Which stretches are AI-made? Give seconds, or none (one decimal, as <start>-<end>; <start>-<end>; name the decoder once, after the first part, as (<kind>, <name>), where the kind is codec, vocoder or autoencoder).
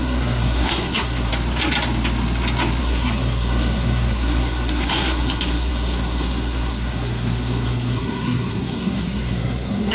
0.0-1.3 (codec, SNAC); 2.8-9.9